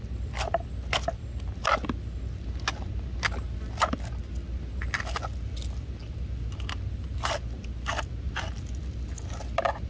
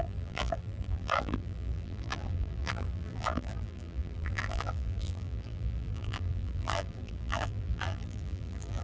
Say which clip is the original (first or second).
first